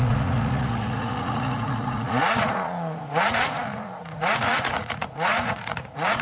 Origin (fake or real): fake